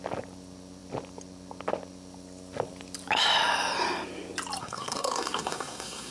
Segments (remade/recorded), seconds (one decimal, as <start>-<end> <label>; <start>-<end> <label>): 0.0-4.6 recorded; 4.6-6.1 remade